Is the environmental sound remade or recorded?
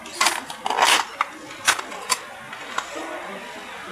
recorded